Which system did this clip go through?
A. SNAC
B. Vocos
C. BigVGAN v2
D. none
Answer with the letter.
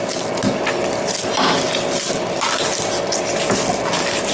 D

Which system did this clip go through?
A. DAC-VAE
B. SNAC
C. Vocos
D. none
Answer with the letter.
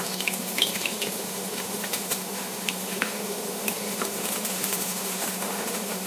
A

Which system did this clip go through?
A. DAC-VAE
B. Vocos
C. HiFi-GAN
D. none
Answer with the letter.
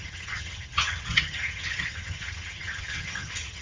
C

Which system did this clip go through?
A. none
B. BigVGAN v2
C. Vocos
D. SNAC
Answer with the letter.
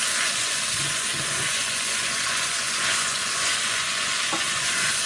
C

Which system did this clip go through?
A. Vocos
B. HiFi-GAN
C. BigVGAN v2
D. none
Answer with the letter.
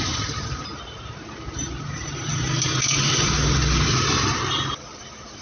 C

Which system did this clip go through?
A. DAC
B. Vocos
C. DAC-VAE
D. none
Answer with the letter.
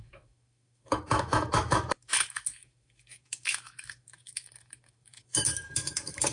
C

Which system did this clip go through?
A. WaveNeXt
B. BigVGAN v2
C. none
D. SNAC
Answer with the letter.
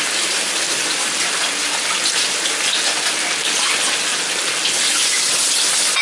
C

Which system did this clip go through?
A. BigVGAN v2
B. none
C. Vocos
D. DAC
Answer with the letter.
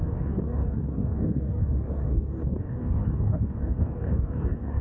D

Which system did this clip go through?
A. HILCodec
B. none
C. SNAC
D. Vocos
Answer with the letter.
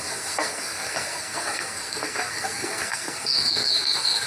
C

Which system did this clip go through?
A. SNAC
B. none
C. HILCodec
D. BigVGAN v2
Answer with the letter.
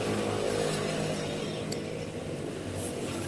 B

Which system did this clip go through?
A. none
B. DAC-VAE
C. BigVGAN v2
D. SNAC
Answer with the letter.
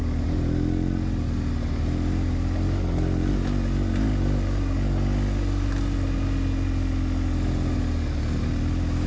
A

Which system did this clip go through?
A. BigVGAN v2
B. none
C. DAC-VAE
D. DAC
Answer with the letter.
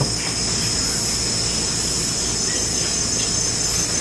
B